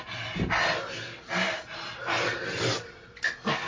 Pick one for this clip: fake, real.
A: real